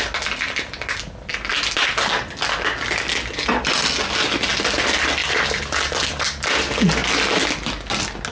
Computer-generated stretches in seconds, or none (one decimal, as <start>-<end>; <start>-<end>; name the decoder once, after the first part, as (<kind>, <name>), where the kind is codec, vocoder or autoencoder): 5.2-6.6 (vocoder, BigVGAN v2)